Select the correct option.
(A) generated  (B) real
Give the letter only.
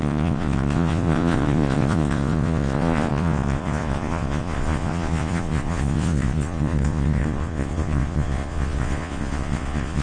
A